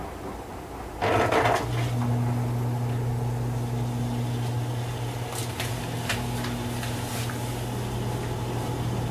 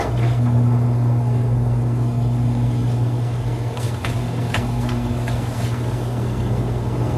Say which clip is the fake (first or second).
second